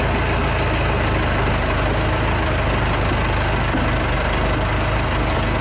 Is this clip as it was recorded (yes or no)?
yes